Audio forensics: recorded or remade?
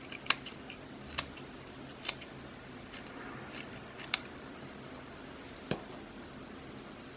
recorded